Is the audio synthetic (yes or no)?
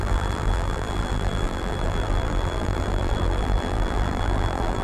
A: yes